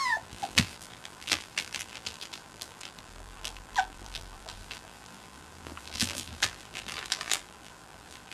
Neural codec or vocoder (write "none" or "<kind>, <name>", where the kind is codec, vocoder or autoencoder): vocoder, BigVGAN v2